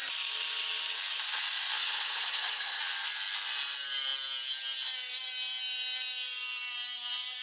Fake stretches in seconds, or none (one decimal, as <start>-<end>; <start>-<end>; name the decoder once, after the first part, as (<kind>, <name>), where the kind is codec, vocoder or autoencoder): 1.8-2.8 (vocoder, HiFi-GAN)